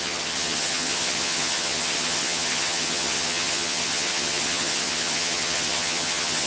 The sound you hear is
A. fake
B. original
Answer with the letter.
A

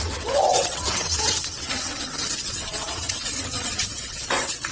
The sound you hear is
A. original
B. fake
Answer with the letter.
B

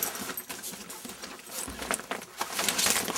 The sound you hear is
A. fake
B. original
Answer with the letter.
B